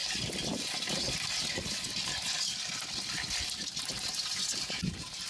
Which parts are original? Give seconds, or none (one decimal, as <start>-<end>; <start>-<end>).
0.0-1.5; 1.9-5.3